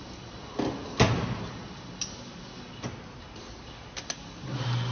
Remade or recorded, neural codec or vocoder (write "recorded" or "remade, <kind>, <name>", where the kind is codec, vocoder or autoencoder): recorded